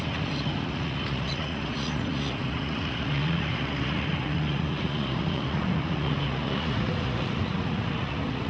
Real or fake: fake